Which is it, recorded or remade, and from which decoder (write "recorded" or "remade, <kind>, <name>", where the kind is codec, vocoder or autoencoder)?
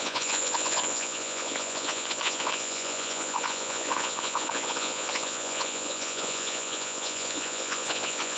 remade, vocoder, Vocos